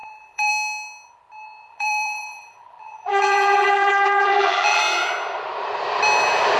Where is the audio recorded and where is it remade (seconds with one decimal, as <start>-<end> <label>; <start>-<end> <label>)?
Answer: 0.0-0.5 remade; 0.5-1.7 recorded; 1.7-4.8 remade; 4.8-6.6 recorded